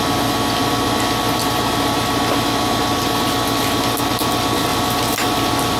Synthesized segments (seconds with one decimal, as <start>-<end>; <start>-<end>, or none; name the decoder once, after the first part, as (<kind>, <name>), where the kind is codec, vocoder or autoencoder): none